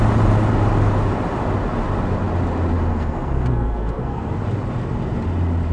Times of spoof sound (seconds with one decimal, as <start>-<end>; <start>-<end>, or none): 2.9-4.3